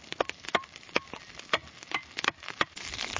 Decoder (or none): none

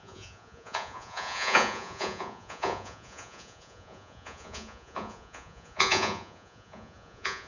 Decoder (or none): vocoder, Vocos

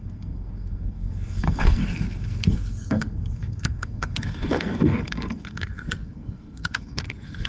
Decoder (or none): codec, SNAC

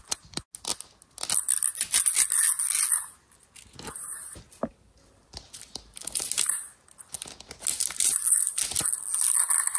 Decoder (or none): none